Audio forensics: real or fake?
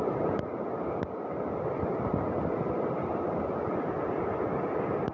real